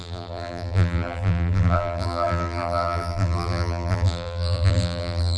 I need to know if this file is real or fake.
fake